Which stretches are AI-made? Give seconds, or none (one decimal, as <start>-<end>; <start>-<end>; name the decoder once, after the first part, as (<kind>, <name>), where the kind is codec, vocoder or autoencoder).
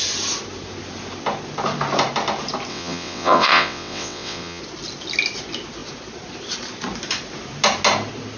2.7-4.6 (vocoder, WaveNeXt)